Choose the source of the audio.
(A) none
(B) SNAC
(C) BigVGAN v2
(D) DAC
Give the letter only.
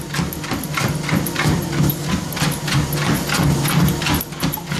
A